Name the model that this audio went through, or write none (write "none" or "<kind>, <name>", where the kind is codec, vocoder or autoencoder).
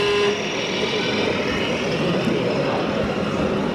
none